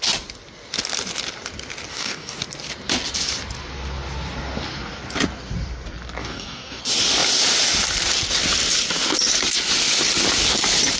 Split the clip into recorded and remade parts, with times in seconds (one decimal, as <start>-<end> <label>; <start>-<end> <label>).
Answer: 0.0-1.9 recorded; 1.9-2.4 remade; 2.4-6.2 recorded; 6.2-6.8 remade; 6.8-11.0 recorded

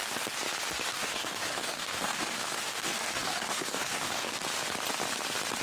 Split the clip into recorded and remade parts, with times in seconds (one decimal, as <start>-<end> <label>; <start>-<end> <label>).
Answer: 0.0-0.9 recorded; 0.9-4.4 remade; 4.4-5.6 recorded

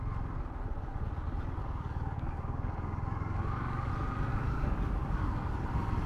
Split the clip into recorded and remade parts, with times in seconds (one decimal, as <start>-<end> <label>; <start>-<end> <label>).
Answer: 0.0-1.6 recorded; 1.6-3.9 remade; 3.9-4.3 recorded; 4.3-5.6 remade; 5.6-6.1 recorded

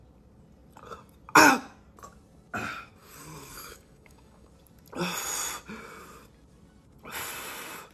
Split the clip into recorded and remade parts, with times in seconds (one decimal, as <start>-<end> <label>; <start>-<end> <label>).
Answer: 0.0-3.0 recorded; 3.0-4.5 remade; 4.5-7.9 recorded

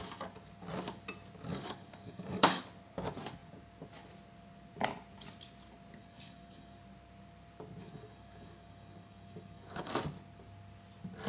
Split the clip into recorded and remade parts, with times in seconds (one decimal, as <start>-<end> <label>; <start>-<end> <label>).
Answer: 0.0-1.5 recorded; 1.5-2.6 remade; 2.6-6.0 recorded; 6.0-6.8 remade; 6.8-7.8 recorded; 7.8-9.9 remade; 9.9-11.3 recorded

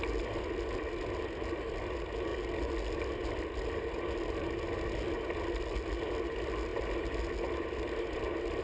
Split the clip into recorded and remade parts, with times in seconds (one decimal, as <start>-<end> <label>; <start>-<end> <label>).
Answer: 0.0-8.6 recorded

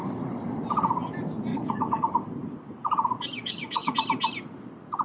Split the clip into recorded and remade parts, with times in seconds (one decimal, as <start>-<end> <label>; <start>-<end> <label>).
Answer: 0.0-1.5 recorded; 1.5-2.3 remade; 2.3-3.4 recorded; 3.4-3.9 remade; 3.9-5.0 recorded